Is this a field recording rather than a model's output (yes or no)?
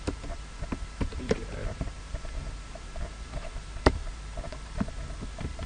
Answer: no